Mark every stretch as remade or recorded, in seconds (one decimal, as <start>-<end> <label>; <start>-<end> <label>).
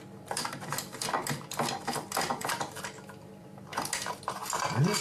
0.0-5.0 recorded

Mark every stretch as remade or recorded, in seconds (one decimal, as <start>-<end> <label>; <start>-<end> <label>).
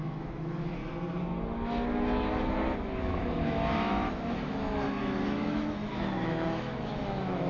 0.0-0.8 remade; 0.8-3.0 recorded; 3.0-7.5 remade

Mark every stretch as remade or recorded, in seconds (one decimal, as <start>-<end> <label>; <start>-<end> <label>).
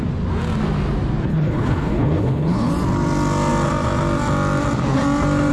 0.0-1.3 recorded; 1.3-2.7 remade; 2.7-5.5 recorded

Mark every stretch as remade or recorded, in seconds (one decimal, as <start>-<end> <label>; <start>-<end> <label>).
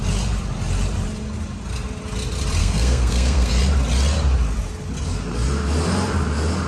0.0-2.6 recorded; 2.6-3.6 remade; 3.6-6.7 recorded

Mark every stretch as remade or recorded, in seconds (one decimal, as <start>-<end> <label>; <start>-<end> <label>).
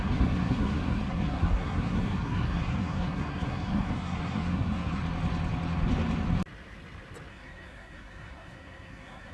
0.0-5.0 remade; 5.0-7.3 recorded; 7.3-9.3 remade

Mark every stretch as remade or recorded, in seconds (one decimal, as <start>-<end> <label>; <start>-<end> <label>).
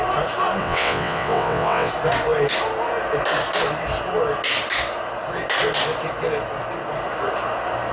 0.0-0.6 recorded; 0.6-1.9 remade; 1.9-7.9 recorded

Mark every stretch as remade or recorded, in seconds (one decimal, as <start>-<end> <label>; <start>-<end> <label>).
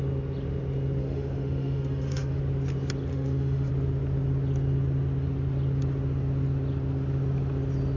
0.0-1.0 recorded; 1.0-2.4 remade; 2.4-3.1 recorded; 3.1-3.7 remade; 3.7-8.0 recorded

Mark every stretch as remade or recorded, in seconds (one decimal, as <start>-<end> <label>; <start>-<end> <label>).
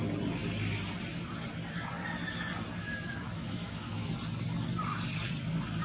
0.0-2.8 recorded; 2.8-4.1 remade; 4.1-5.8 recorded